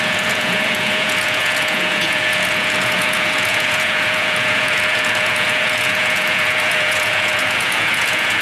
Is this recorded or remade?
remade